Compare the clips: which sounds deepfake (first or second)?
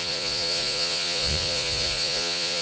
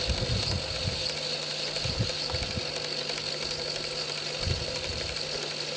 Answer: first